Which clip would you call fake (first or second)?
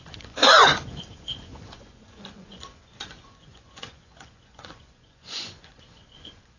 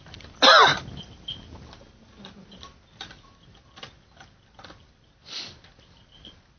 first